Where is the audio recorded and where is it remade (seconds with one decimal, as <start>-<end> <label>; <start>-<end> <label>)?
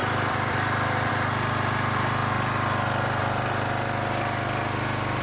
0.0-1.1 remade; 1.1-5.2 recorded